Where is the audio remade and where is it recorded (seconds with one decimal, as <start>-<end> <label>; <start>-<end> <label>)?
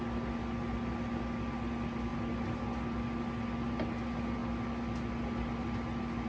0.0-6.3 recorded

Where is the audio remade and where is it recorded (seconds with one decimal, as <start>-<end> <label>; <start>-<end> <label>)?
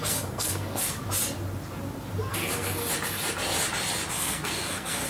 0.0-1.0 remade; 1.0-2.3 recorded; 2.3-2.8 remade; 2.8-4.1 recorded; 4.1-5.1 remade